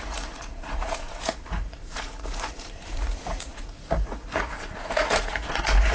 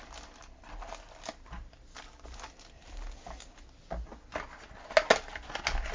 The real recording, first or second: second